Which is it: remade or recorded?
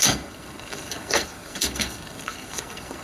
remade